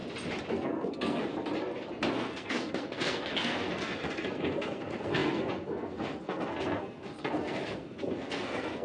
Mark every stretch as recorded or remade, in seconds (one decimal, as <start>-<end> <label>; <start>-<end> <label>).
0.0-0.5 recorded; 0.5-1.3 remade; 1.3-2.1 recorded; 2.1-8.8 remade